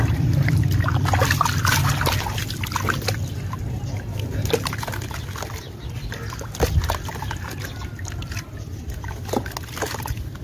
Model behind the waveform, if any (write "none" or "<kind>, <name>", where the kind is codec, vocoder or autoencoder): none